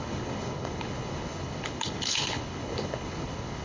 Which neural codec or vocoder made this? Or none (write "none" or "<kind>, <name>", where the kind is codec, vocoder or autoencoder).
codec, HILCodec